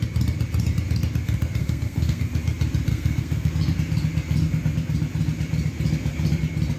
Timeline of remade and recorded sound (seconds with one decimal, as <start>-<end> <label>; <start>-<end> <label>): 0.0-1.6 recorded; 1.6-2.2 remade; 2.2-2.9 recorded; 2.9-3.5 remade; 3.5-6.8 recorded